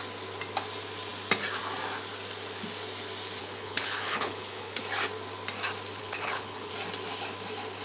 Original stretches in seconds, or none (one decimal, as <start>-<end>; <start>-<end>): 0.0-3.4; 4.8-6.0; 6.7-7.8

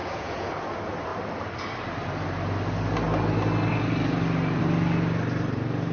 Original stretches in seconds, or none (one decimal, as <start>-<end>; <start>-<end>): 0.5-5.9

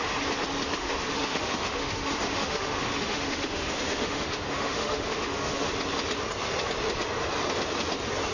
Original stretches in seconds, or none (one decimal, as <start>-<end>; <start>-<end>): 0.0-0.8; 5.7-8.3

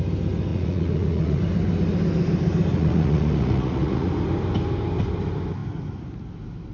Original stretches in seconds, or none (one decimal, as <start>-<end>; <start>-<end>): 0.0-0.5; 1.4-2.7; 4.1-6.7

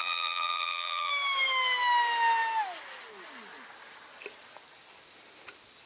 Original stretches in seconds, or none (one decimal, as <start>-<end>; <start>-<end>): 1.1-5.9

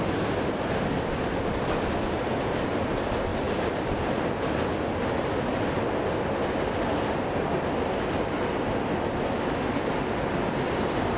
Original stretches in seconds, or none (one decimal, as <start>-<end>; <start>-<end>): 0.0-11.2